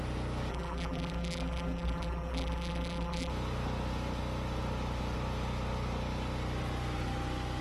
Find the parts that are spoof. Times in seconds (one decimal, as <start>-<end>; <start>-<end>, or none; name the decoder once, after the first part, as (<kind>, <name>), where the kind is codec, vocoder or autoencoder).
0.5-3.3 (vocoder, BigVGAN v2)